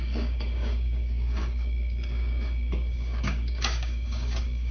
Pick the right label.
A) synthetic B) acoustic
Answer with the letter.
A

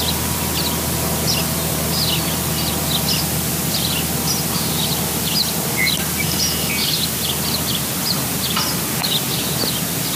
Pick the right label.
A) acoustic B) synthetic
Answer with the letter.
A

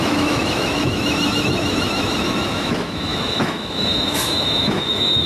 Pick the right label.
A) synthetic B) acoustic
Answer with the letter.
A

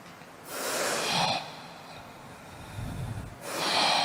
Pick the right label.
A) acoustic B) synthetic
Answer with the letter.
A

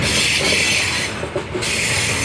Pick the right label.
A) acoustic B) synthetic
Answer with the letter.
A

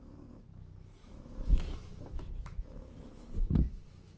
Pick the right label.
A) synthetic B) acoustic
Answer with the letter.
A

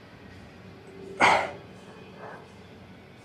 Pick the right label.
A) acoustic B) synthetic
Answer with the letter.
A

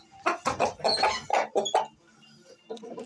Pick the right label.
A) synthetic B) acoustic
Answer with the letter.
B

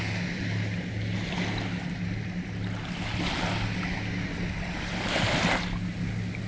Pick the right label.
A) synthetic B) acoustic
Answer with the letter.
B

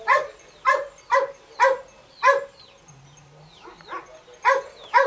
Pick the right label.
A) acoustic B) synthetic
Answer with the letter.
A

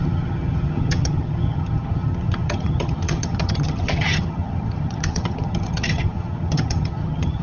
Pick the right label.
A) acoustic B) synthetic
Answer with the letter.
B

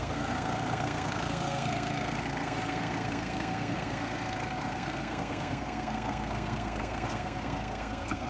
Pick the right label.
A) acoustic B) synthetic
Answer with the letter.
B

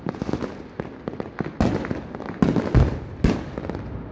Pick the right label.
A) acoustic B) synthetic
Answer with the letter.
A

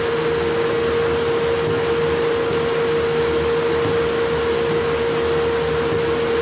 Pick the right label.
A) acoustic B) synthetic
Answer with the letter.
A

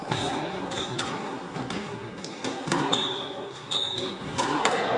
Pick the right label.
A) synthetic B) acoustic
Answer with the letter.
A